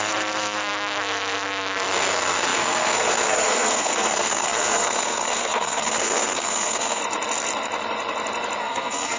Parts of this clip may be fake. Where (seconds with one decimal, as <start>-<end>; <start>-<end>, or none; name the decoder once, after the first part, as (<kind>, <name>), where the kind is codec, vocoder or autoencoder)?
0.0-7.0 (codec, SNAC); 8.6-9.2